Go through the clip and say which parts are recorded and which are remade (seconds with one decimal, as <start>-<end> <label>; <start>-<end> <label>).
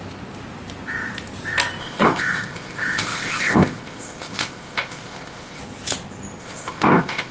0.0-1.8 recorded; 1.8-5.6 remade; 5.6-6.4 recorded; 6.4-7.3 remade